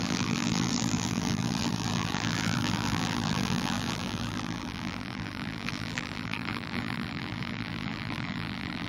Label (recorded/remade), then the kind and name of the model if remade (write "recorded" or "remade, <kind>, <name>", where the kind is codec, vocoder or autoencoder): remade, vocoder, BigVGAN v2